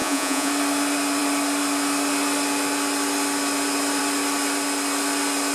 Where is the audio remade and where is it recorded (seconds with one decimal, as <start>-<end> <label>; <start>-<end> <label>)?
0.0-0.5 remade; 0.5-5.5 recorded